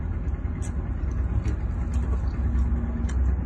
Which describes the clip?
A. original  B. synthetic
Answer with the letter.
A